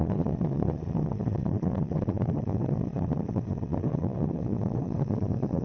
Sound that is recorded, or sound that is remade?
remade